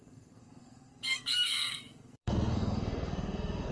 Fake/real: fake